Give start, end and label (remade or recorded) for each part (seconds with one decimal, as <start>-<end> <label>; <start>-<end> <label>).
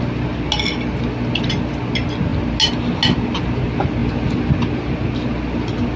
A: 0.0-6.0 recorded